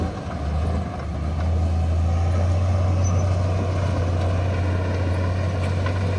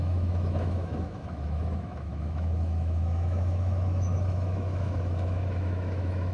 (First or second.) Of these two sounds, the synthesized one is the second